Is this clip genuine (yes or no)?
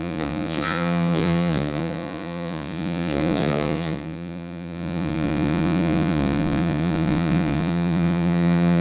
no